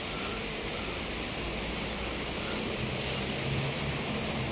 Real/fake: real